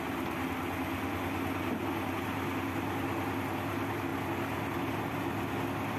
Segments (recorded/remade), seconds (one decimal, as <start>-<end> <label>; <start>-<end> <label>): 0.0-6.0 recorded